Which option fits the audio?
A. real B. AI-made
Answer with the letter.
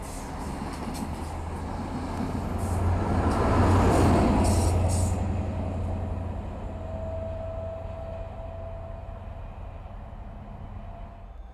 A